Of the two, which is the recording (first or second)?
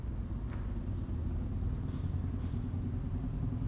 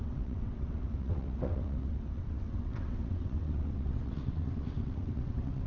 first